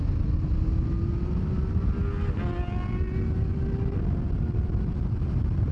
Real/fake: real